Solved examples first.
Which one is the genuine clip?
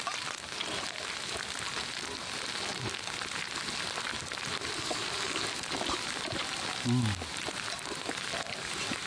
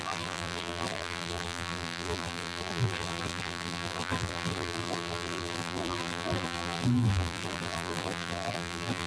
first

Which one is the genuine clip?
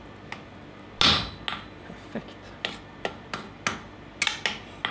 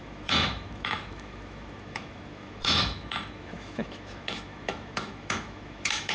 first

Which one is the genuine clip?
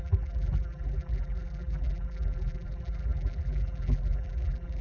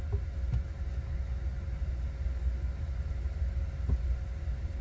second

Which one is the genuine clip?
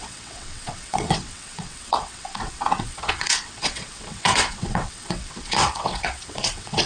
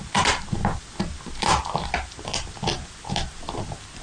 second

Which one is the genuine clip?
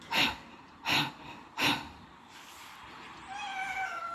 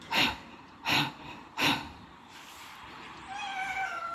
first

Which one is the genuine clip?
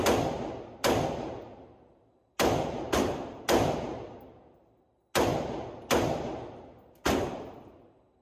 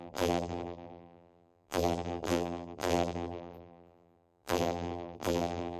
first